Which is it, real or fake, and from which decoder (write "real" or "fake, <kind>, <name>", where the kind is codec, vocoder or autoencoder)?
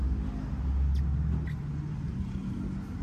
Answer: real